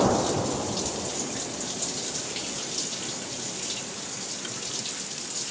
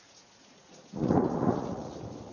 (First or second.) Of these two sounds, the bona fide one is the first